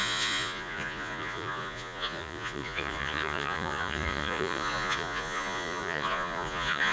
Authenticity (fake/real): fake